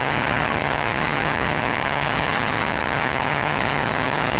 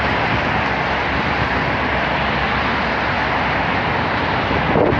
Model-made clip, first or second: first